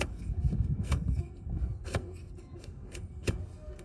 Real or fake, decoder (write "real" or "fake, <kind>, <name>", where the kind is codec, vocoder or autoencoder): fake, codec, SNAC